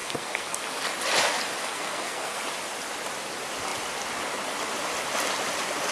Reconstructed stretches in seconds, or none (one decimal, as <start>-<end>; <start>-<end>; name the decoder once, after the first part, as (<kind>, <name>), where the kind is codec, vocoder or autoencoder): 0.0-0.8 (codec, SNAC); 1.6-2.4